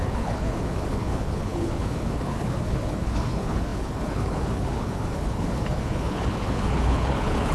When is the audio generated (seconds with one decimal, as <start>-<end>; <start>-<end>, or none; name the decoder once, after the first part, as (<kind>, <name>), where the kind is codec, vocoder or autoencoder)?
0.0-7.5 (codec, HILCodec)